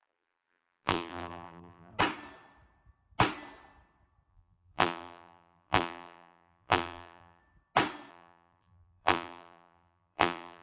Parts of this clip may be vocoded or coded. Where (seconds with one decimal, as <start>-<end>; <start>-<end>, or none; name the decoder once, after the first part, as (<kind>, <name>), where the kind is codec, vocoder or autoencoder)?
0.0-1.9 (vocoder, BigVGAN v2); 4.3-7.4; 8.1-10.6